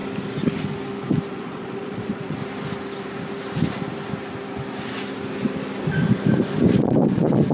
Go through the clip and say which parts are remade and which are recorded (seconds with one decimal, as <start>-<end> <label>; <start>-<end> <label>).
0.0-1.3 recorded; 1.3-2.4 remade; 2.4-6.8 recorded; 6.8-7.5 remade

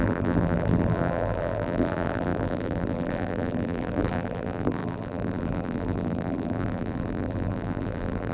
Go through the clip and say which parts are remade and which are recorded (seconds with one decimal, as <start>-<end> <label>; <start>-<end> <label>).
0.0-8.3 remade

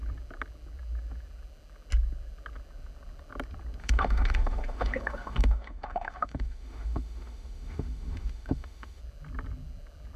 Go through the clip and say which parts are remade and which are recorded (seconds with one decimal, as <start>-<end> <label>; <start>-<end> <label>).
0.0-3.8 recorded; 3.8-9.0 remade; 9.0-10.2 recorded